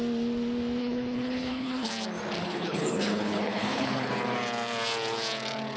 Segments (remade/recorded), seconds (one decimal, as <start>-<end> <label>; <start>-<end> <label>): 0.0-0.8 recorded; 0.8-1.9 remade; 1.9-2.4 recorded; 2.4-4.1 remade; 4.1-5.8 recorded